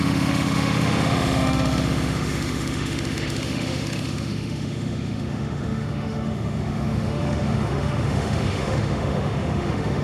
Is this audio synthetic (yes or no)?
yes